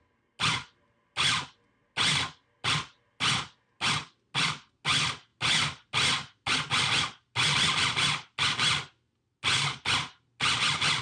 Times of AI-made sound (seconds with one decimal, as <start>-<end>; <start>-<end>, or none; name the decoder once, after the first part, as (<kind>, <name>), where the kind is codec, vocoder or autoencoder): none